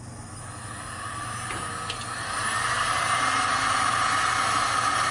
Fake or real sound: real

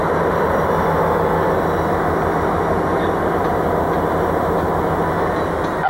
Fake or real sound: real